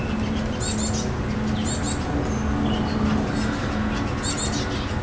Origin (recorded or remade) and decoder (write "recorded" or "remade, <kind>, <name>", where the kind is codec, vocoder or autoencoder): recorded